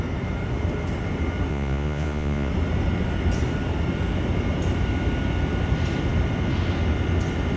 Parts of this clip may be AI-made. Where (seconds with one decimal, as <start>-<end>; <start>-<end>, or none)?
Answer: 1.5-2.5